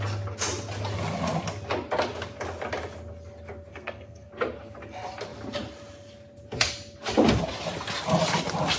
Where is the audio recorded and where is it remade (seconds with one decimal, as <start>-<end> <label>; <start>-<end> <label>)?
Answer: 0.0-3.7 recorded; 3.7-4.3 remade; 4.3-8.8 recorded